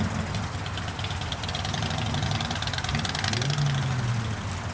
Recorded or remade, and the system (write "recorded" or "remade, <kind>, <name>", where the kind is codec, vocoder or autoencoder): recorded